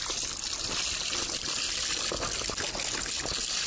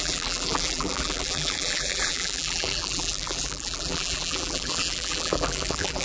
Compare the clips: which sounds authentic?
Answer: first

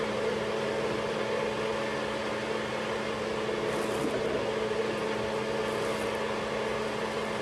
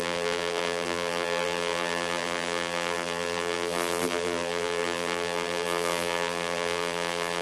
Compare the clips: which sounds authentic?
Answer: first